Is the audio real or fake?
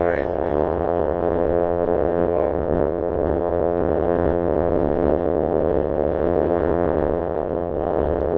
fake